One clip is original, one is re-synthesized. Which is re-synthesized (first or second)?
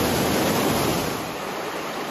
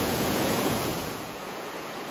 second